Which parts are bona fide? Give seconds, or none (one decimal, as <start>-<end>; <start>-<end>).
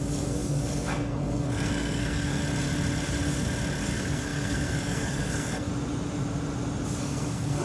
2.4-3.9; 5.7-7.0